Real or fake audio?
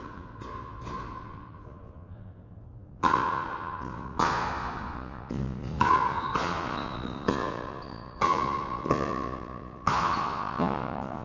fake